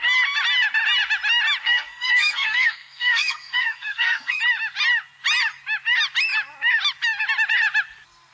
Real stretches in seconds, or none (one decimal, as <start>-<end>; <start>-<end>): 0.0-1.6; 4.4-8.3